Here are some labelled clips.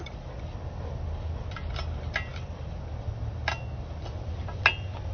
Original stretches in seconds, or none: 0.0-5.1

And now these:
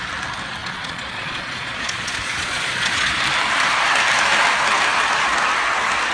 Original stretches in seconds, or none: 0.0-0.6; 3.2-6.1

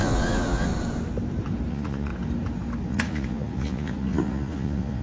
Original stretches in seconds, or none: 0.7-1.7; 2.1-2.9

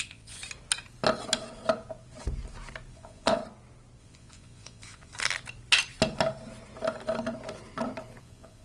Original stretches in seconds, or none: 0.4-2.9; 3.4-4.0; 5.1-8.2

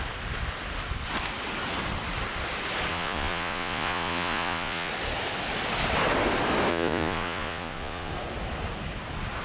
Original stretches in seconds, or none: 0.0-2.9; 4.9-6.7; 8.1-9.4